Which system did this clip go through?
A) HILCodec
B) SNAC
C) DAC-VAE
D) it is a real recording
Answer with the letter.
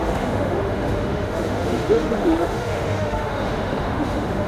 C